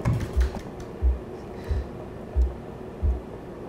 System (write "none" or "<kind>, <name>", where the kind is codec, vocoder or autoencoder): vocoder, BigVGAN v2